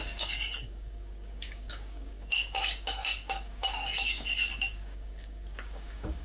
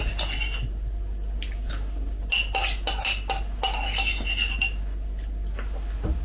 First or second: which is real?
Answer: second